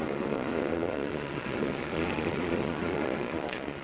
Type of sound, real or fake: fake